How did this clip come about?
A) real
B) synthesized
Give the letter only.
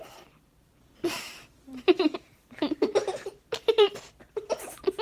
B